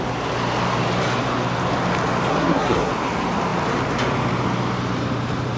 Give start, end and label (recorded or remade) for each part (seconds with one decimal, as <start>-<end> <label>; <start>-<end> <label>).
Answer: 0.0-2.3 recorded; 2.3-2.9 remade; 2.9-5.6 recorded

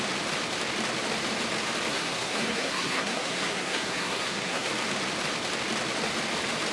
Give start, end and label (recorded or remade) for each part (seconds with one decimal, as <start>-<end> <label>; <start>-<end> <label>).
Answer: 0.0-1.9 recorded; 1.9-4.7 remade; 4.7-6.7 recorded

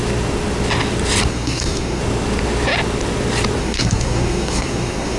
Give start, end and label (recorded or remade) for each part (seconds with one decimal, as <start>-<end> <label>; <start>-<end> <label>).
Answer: 0.0-1.3 recorded; 1.3-2.0 remade; 2.0-3.6 recorded; 3.6-5.2 remade

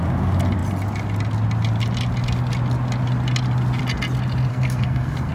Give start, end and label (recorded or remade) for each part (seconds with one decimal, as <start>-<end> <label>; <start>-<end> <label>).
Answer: 0.0-4.5 recorded; 4.5-5.3 remade

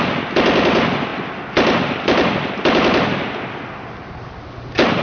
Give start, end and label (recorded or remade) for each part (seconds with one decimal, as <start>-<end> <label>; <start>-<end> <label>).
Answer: 0.0-5.0 recorded

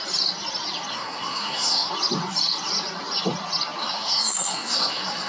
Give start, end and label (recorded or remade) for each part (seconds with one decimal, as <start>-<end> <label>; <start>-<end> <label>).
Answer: 0.0-0.9 recorded; 0.9-1.9 remade; 1.9-3.8 recorded; 3.8-5.3 remade

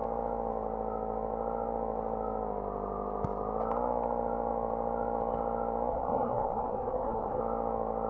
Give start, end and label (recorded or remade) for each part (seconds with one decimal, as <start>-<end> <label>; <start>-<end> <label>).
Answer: 0.0-5.9 recorded; 5.9-7.4 remade; 7.4-8.1 recorded

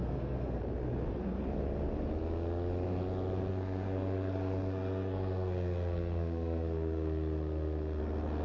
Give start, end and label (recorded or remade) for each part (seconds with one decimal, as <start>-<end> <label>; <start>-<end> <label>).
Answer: 0.0-0.6 remade; 0.6-3.5 recorded; 3.5-8.0 remade; 8.0-8.4 recorded